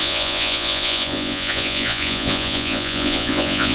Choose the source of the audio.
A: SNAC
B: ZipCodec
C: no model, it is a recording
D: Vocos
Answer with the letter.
D